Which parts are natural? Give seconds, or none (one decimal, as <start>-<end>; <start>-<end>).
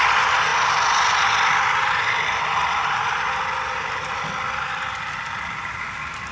0.0-6.3